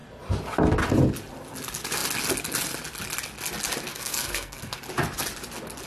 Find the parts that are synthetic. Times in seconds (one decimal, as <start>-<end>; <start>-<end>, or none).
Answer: 3.9-4.8